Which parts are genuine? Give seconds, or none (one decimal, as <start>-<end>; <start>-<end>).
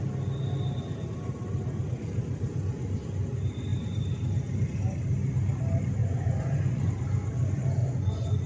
0.0-6.0; 6.9-7.8